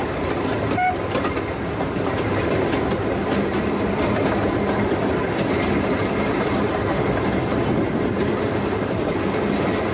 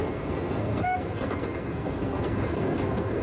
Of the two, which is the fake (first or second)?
second